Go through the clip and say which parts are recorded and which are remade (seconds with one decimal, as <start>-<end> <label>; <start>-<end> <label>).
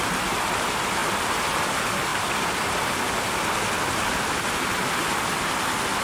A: 0.0-6.0 recorded